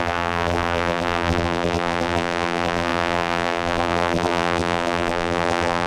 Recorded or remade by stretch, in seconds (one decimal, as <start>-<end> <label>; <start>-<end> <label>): 0.0-5.9 remade